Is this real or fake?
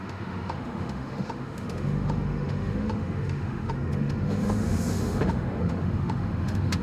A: fake